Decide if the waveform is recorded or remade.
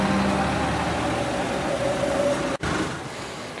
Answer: recorded